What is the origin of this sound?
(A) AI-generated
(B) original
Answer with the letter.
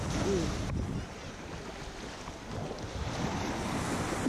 B